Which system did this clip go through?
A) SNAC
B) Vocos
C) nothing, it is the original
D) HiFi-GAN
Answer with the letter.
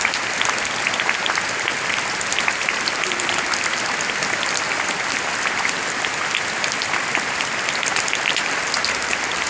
C